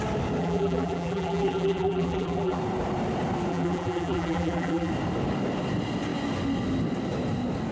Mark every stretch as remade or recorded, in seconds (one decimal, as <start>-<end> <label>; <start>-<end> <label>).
0.0-0.4 recorded; 0.4-2.6 remade; 2.6-3.5 recorded; 3.5-4.9 remade; 4.9-7.7 recorded